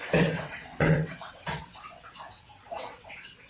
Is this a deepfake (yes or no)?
yes